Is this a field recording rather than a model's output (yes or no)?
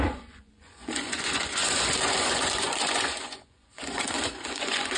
no